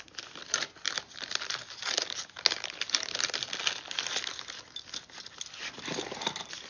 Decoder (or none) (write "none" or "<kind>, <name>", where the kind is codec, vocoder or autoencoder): none